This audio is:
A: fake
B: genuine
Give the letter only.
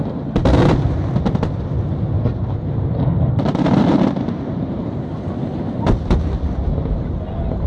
B